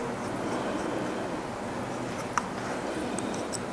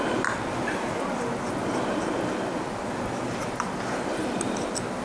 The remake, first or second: second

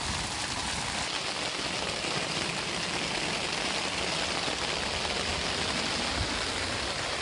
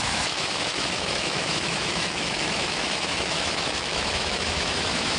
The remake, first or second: second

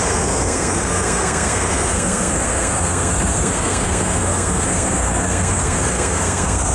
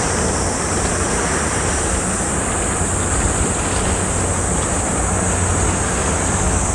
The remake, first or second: first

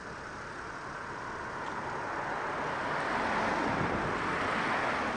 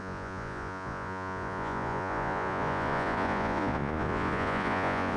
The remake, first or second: second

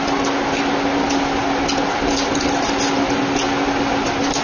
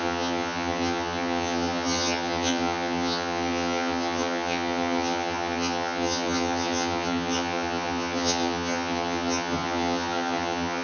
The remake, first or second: second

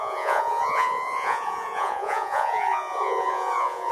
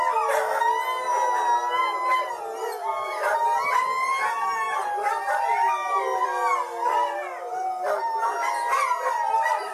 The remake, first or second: first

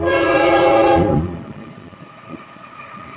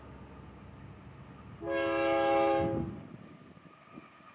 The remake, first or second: first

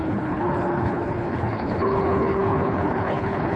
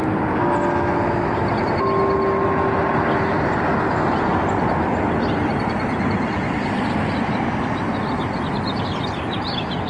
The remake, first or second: first